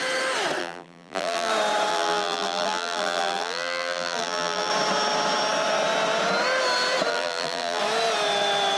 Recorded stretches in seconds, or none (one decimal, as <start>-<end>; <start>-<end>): 0.0-0.6; 1.5-1.9; 4.7-7.1; 7.8-8.8